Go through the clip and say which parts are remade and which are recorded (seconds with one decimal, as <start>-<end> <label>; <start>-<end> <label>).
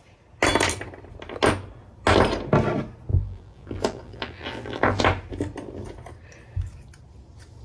0.0-3.1 recorded; 3.1-5.0 remade; 5.0-7.6 recorded